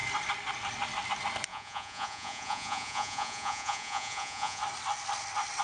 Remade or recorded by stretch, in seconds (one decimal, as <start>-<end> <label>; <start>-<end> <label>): 0.0-1.5 recorded; 1.5-4.6 remade; 4.6-5.6 recorded